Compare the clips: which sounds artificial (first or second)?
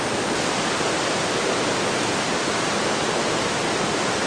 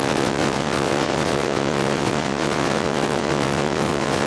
second